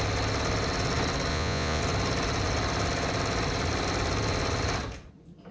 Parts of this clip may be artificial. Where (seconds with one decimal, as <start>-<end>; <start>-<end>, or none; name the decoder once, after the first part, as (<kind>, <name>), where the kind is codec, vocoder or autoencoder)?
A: 1.3-1.8 (vocoder, Vocos)